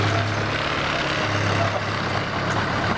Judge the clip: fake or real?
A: real